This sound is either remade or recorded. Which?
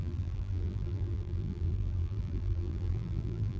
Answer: remade